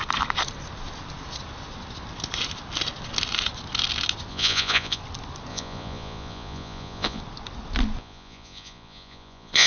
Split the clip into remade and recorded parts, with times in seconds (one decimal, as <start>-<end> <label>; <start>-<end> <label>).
0.0-4.3 recorded; 4.3-5.0 remade; 5.0-5.5 recorded; 5.5-7.2 remade; 7.2-8.0 recorded; 8.0-9.7 remade